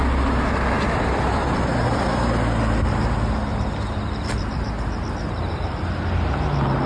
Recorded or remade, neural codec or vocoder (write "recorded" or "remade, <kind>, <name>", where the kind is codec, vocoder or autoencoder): recorded